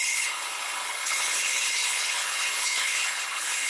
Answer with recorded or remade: remade